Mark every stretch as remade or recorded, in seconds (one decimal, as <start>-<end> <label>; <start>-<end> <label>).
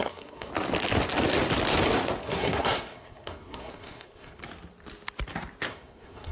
0.0-0.5 remade; 0.5-2.2 recorded; 2.2-4.4 remade; 4.4-5.7 recorded; 5.7-6.3 remade